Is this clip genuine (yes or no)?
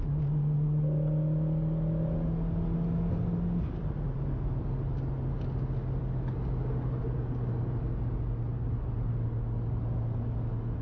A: yes